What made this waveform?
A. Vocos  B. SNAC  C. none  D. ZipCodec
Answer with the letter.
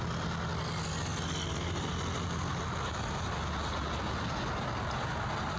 C